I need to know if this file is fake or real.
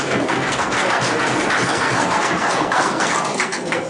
fake